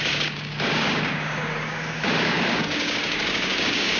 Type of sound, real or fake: fake